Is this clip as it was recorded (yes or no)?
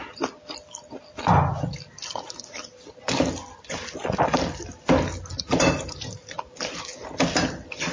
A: yes